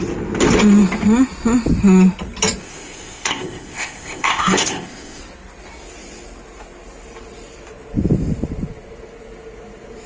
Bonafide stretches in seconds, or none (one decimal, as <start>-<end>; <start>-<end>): 0.0-2.6; 5.2-10.1